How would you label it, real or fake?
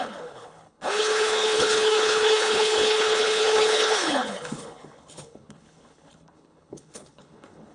fake